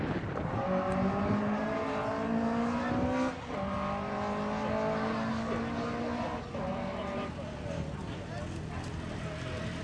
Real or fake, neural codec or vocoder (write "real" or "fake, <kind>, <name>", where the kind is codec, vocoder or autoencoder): real